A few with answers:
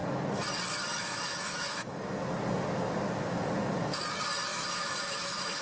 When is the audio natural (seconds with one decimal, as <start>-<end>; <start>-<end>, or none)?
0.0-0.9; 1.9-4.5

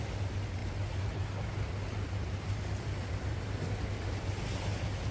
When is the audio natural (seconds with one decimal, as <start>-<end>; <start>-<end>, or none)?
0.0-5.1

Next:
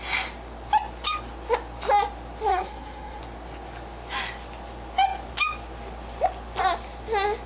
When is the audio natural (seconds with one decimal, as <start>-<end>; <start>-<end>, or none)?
0.0-2.5; 3.2-7.5

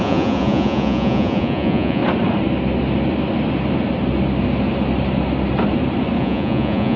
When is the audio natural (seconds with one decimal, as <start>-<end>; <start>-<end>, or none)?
2.0-6.2